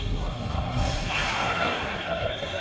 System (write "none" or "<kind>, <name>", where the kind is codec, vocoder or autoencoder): codec, SNAC